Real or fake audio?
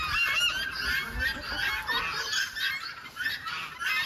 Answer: real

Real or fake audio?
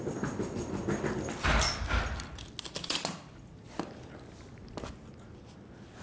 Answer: real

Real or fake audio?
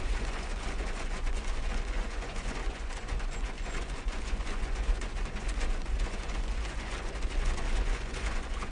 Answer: fake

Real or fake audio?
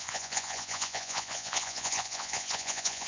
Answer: fake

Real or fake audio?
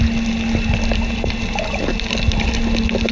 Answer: real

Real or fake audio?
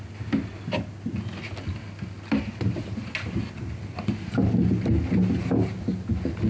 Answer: real